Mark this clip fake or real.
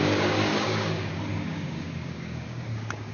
fake